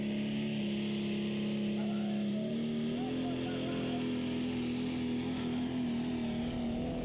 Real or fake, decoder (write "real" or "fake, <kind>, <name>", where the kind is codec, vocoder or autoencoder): real